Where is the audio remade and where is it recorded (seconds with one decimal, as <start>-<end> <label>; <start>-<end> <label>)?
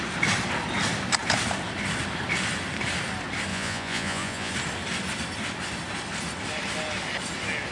0.0-3.5 recorded; 3.5-4.5 remade; 4.5-7.7 recorded